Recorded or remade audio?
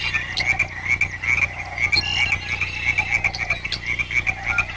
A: recorded